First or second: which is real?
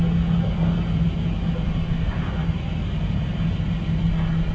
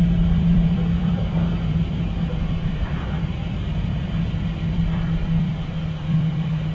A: first